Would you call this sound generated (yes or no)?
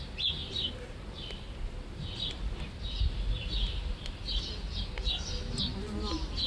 no